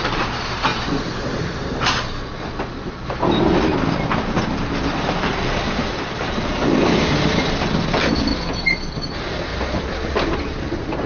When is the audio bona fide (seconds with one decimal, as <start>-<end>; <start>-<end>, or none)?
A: 0.7-5.1; 8.3-9.1